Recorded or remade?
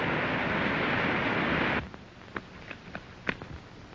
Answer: recorded